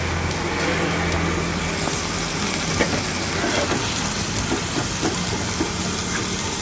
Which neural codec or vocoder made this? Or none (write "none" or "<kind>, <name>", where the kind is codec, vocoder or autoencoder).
none